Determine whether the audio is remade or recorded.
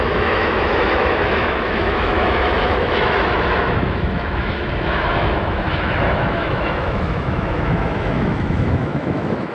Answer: remade